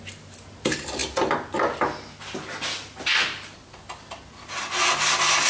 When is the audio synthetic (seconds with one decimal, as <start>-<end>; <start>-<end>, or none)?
none